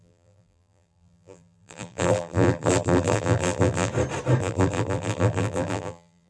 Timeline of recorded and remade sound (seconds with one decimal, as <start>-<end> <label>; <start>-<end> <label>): 0.0-3.9 remade; 3.9-4.4 recorded; 4.4-6.3 remade